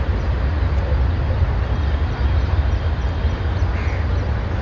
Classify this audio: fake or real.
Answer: real